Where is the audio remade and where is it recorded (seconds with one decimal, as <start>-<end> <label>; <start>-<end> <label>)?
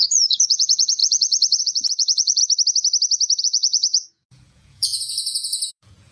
0.0-2.4 remade; 2.4-3.4 recorded; 3.4-6.1 remade